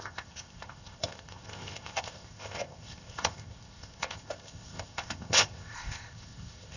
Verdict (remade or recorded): remade